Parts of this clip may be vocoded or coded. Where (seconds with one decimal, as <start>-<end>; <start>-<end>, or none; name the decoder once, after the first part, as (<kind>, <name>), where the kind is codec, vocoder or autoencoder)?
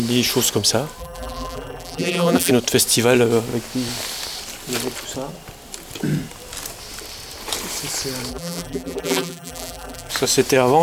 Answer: 1.0-2.5 (vocoder, BigVGAN v2); 8.3-10.1